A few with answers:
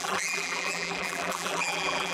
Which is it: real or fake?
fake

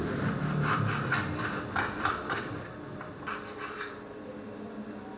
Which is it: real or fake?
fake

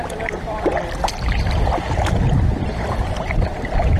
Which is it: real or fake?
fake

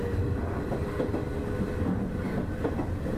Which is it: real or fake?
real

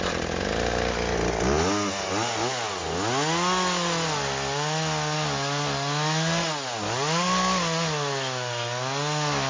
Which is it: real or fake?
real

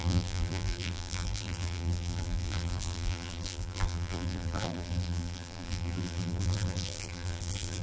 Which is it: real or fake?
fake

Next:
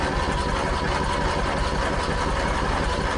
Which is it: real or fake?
real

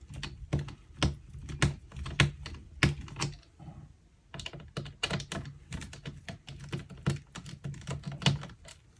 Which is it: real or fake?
real